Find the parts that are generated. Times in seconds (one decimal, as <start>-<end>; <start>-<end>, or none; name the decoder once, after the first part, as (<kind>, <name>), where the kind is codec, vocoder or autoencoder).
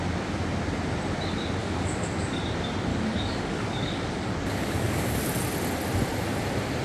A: 1.6-2.4 (codec, DAC); 2.9-5.2